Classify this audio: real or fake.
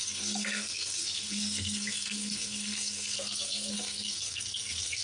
fake